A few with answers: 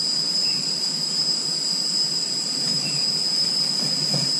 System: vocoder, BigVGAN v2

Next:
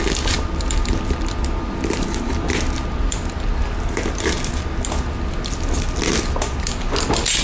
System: none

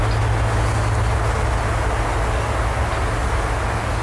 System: none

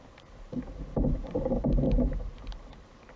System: vocoder, BigVGAN v2